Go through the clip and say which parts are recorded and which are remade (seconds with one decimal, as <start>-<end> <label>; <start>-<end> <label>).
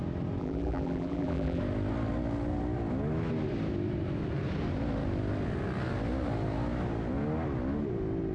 0.0-0.4 recorded; 0.4-1.6 remade; 1.6-8.3 recorded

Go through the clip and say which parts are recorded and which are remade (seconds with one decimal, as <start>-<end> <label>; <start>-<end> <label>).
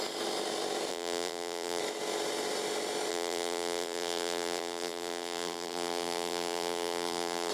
0.0-0.9 recorded; 0.9-1.8 remade; 1.8-3.1 recorded; 3.1-7.5 remade